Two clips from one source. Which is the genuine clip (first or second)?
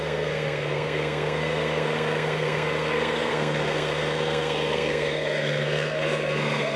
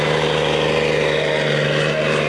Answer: second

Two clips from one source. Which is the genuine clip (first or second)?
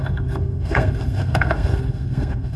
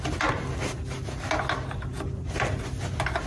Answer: second